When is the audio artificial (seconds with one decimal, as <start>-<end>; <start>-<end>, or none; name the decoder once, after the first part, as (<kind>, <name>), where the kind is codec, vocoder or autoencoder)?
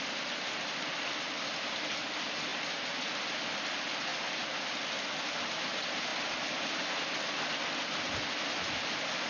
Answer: none